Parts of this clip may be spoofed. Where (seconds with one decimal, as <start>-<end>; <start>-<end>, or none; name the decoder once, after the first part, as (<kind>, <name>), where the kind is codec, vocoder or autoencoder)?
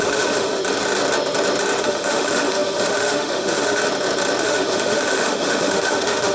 0.0-0.6 (autoencoder, DAC-VAE); 1.8-3.8; 4.4-6.3